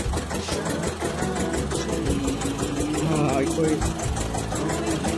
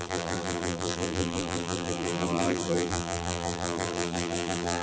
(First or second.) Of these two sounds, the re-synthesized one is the second